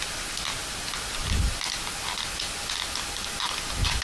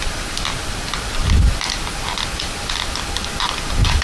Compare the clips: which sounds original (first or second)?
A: first